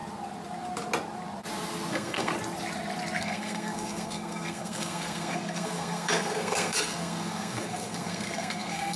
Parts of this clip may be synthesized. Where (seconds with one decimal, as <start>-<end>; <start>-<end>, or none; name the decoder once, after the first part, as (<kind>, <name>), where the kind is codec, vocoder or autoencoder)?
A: 1.9-2.3 (codec, SNAC); 3.2-9.0